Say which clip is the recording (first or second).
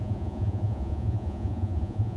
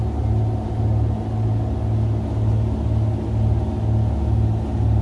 second